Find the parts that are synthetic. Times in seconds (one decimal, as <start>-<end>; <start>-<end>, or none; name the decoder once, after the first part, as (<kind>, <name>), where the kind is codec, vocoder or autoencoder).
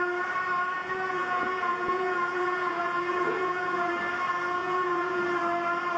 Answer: 0.8-3.9 (vocoder, Vocos); 4.6-5.2